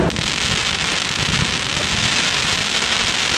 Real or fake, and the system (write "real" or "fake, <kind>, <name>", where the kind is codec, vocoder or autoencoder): real